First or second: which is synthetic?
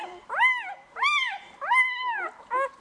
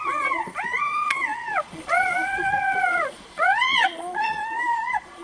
second